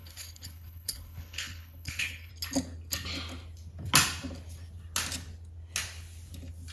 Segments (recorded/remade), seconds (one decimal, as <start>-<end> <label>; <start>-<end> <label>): 0.0-2.3 remade; 2.3-6.7 recorded